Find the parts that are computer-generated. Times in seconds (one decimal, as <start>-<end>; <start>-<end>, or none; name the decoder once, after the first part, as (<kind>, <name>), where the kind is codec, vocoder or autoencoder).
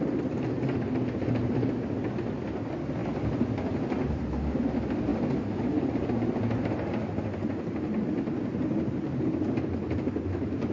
none